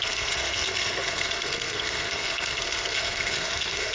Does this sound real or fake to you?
fake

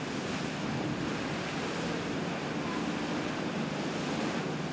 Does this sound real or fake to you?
real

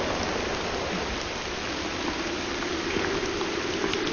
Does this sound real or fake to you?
real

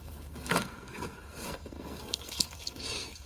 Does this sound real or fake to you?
fake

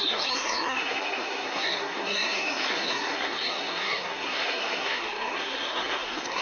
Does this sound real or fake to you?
fake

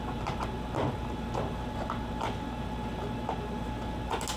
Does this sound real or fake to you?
real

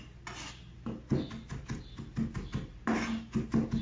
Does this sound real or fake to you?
real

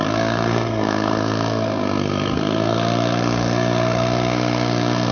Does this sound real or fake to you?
fake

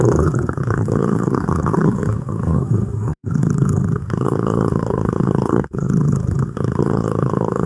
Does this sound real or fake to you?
fake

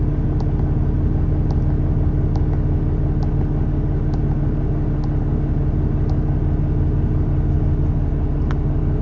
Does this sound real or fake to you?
real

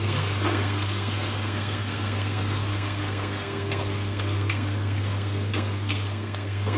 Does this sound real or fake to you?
fake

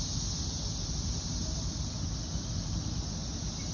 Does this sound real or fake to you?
real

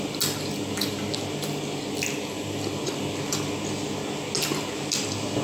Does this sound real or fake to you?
real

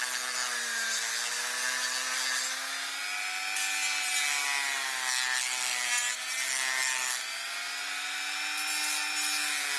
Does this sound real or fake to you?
real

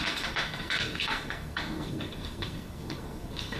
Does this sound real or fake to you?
fake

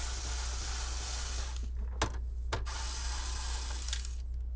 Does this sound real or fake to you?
real